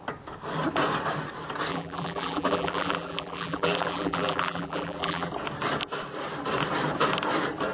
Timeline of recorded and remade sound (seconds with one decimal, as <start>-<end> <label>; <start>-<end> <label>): 0.0-1.7 recorded; 1.7-5.3 remade; 5.3-7.7 recorded